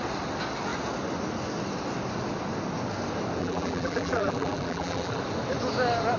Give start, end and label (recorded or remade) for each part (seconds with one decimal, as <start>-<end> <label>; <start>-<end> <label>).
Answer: 0.0-3.4 recorded; 3.4-5.2 remade; 5.2-6.2 recorded